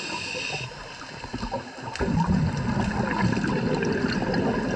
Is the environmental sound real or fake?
real